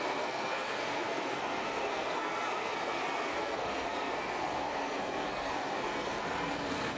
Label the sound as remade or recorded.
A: remade